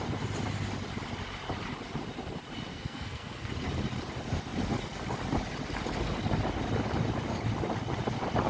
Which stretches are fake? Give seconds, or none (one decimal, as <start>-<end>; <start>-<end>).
2.7-3.5